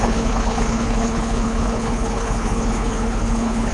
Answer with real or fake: fake